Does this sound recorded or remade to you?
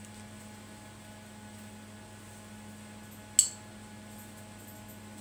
recorded